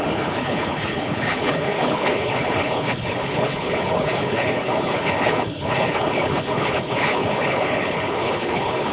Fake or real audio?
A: fake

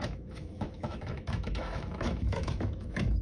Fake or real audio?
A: fake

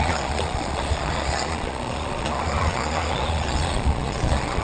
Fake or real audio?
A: fake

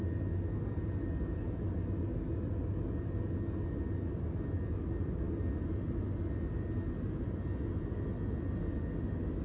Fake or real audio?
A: real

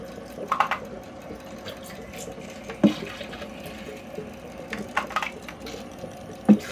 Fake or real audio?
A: real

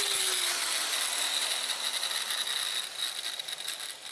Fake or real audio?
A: real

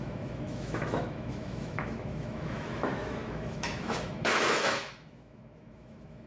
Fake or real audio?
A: fake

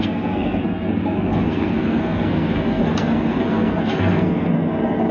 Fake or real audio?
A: fake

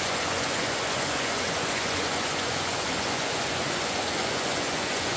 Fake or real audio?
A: fake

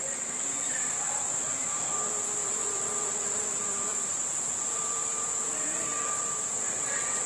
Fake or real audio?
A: fake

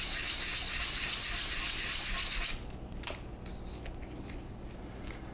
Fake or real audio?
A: real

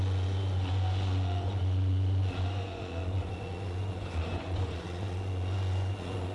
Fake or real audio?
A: fake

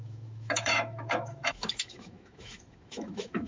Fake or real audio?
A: fake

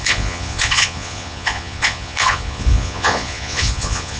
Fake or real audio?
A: fake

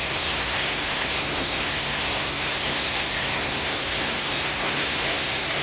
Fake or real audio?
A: fake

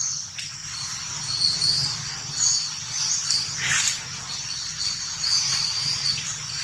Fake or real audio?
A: real